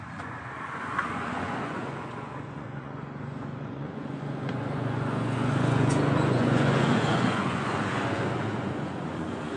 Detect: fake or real fake